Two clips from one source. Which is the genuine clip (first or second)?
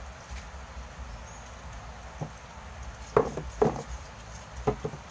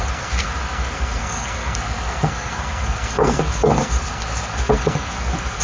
first